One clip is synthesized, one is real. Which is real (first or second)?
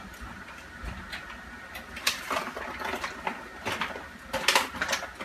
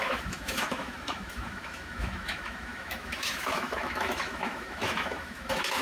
first